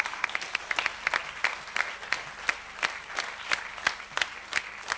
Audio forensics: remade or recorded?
recorded